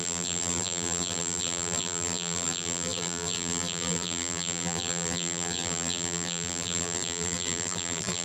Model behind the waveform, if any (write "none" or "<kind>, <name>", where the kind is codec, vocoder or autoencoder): vocoder, BigVGAN v2